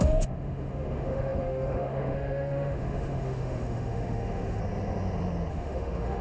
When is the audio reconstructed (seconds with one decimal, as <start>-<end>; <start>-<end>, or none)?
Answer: 0.0-4.6; 5.5-6.2